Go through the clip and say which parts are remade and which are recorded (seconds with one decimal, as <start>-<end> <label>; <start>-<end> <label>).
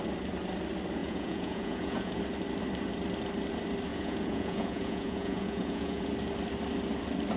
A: 0.0-1.0 recorded; 1.0-2.2 remade; 2.2-3.9 recorded; 3.9-6.1 remade; 6.1-7.4 recorded